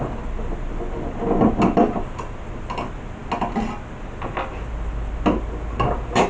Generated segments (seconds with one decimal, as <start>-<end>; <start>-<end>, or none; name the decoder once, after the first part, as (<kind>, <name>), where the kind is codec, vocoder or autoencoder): none